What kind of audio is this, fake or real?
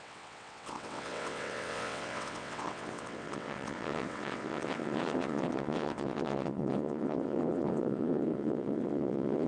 fake